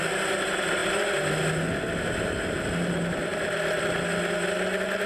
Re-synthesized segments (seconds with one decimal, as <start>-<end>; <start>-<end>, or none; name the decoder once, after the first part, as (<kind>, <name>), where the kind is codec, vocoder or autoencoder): none